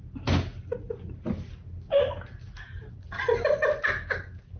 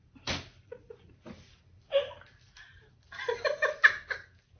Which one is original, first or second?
first